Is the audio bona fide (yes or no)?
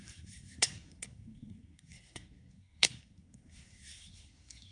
no